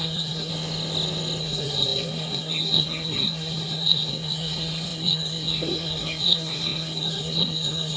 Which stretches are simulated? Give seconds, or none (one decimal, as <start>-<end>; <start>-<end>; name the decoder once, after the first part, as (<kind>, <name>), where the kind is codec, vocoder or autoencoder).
0.0-0.5 (codec, SNAC); 1.4-8.0